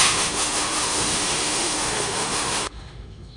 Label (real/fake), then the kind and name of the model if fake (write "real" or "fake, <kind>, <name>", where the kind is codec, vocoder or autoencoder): fake, autoencoder, DAC-VAE